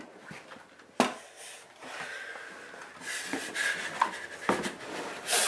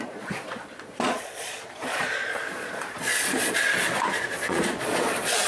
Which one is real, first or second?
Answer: first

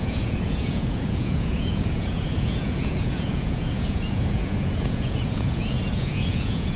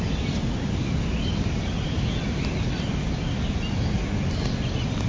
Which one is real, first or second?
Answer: second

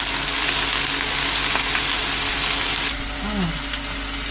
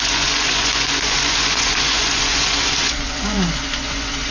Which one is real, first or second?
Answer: first